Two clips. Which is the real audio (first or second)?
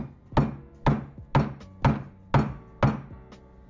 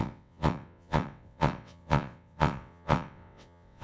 first